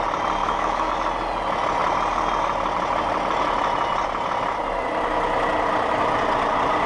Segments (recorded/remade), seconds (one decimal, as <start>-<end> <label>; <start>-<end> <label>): 0.0-0.4 recorded; 0.4-0.9 remade; 0.9-6.9 recorded